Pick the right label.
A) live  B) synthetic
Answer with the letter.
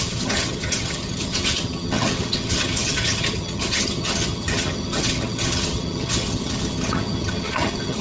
B